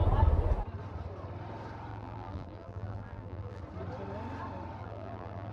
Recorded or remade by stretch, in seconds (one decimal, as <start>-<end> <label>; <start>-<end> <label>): 0.0-1.9 recorded; 1.9-3.6 remade; 3.6-4.8 recorded; 4.8-5.5 remade